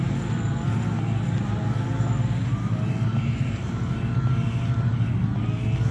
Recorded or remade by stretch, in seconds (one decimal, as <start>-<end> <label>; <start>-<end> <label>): 0.0-3.1 recorded; 3.1-3.8 remade; 3.8-5.9 recorded